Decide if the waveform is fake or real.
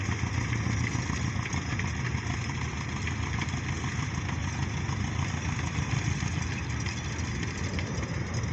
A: real